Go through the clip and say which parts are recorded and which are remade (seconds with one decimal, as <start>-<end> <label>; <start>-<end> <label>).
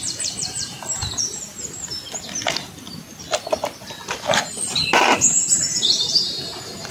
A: 0.0-1.5 remade; 1.5-5.1 recorded; 5.1-6.9 remade